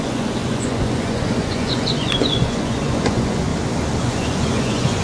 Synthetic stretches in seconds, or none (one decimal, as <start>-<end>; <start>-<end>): 0.0-3.5; 4.0-5.0